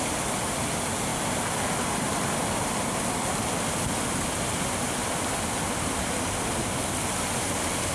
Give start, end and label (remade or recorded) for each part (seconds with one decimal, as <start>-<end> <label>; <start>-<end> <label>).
0.0-7.9 recorded